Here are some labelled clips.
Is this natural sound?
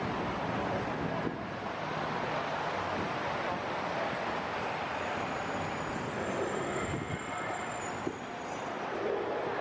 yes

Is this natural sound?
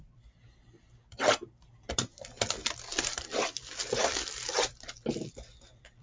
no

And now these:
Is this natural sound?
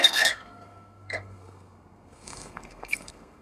no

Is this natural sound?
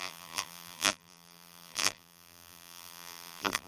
no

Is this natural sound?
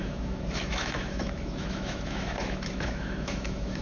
no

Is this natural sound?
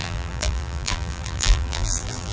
no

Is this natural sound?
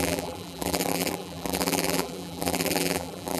no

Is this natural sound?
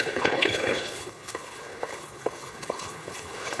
no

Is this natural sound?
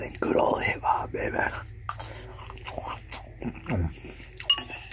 yes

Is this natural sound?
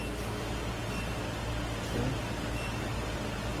yes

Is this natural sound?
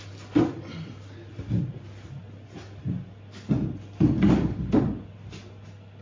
yes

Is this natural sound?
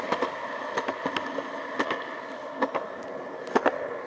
yes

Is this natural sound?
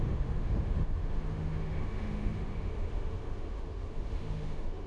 no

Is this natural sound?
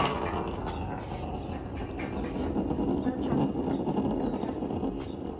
yes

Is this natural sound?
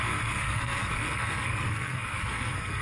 no